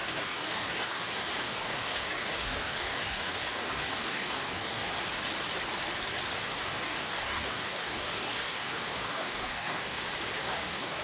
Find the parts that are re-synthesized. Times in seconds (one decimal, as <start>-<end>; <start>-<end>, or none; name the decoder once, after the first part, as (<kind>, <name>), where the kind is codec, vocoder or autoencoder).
0.0-4.9 (codec, DAC); 6.5-10.0; 10.4-11.0